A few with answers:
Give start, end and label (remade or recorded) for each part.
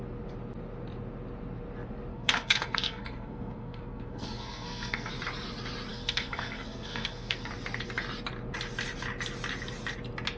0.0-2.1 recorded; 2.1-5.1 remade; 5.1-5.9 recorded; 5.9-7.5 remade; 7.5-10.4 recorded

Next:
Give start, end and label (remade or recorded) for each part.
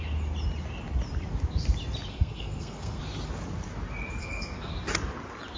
0.0-2.1 recorded; 2.1-3.0 remade; 3.0-4.2 recorded; 4.2-4.7 remade; 4.7-5.6 recorded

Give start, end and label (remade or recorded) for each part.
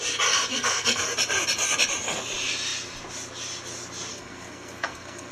0.0-0.5 recorded; 0.5-1.0 remade; 1.0-4.1 recorded; 4.1-5.3 remade